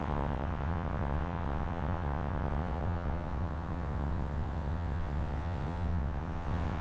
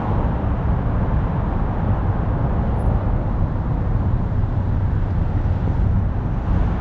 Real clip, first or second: second